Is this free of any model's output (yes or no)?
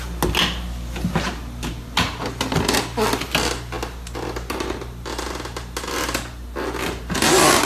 yes